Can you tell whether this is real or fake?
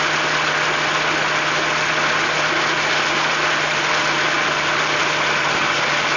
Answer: real